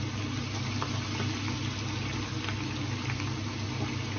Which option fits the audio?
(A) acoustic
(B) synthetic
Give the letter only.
A